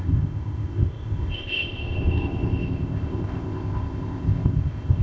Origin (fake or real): fake